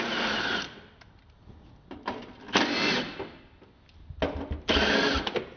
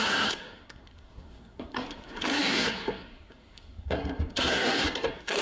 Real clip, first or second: first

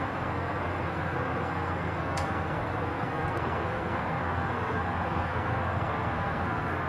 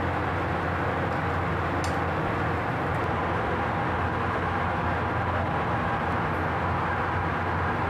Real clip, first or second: second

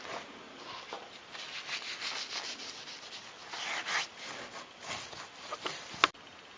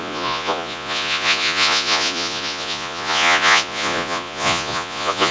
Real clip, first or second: first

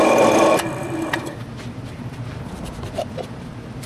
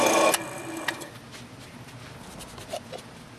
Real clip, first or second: second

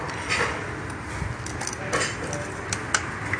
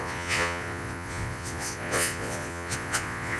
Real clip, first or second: first